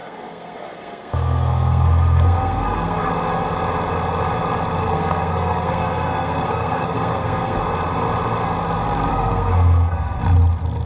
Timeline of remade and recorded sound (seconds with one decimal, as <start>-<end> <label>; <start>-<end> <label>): 0.0-3.1 remade; 3.1-4.8 recorded; 4.8-7.6 remade; 7.6-9.1 recorded; 9.1-10.2 remade; 10.2-10.9 recorded